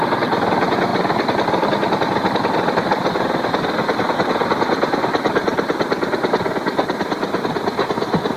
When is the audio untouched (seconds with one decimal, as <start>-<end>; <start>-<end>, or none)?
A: 0.0-0.9; 1.8-4.4; 7.4-8.4